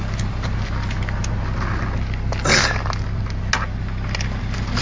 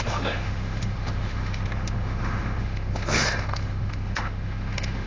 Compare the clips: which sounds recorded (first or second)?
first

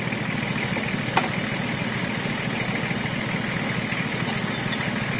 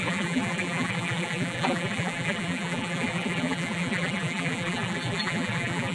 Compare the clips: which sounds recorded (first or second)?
first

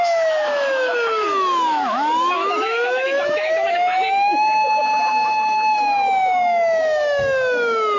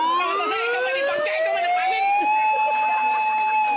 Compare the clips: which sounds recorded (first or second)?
second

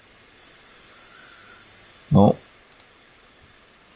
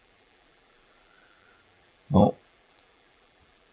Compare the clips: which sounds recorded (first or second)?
first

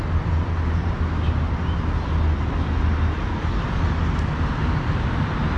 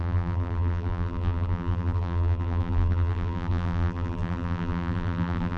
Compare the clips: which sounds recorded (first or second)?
first